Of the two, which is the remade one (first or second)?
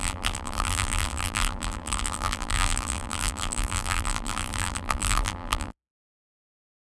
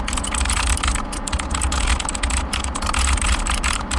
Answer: first